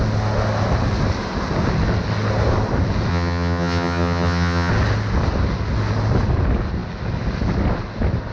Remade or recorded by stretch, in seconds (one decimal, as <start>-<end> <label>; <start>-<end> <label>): 0.0-3.1 recorded; 3.1-4.7 remade; 4.7-8.3 recorded